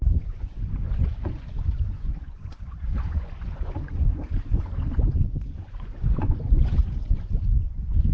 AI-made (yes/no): yes